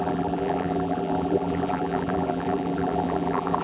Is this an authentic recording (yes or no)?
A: no